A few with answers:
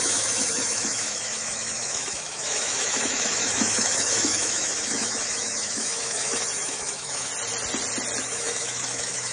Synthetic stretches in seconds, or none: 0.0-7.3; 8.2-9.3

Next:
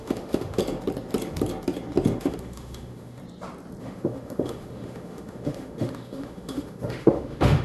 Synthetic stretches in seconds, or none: 0.0-0.6; 2.2-3.2; 3.8-7.6

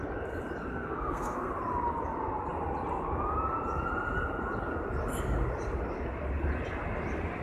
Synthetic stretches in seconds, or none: 0.7-1.5

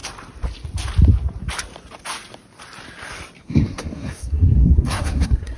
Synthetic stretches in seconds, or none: 3.4-5.6

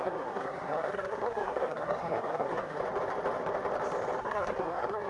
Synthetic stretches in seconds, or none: 0.0-2.8; 4.2-5.1

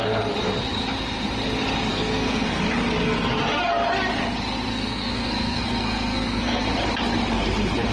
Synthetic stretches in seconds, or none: 1.9-2.6; 4.7-6.7

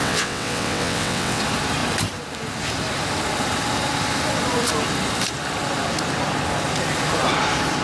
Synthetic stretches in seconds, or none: 0.0-1.4